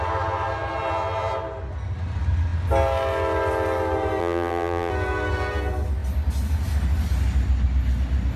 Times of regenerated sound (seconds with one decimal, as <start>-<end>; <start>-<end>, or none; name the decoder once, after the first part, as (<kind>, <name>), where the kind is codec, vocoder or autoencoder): 4.2-4.9 (vocoder, BigVGAN v2)